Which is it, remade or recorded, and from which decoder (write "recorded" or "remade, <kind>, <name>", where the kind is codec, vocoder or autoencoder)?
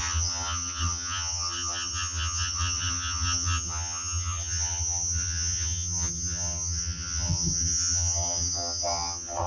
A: remade, vocoder, HiFi-GAN